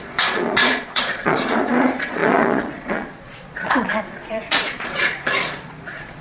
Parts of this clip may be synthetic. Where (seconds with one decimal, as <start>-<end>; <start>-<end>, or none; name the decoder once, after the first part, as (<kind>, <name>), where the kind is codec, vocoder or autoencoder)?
0.0-6.2 (vocoder, Vocos)